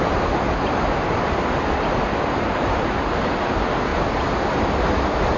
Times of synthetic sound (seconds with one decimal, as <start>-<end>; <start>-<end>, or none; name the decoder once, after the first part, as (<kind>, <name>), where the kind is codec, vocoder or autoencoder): none